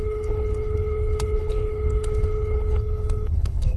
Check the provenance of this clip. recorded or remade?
remade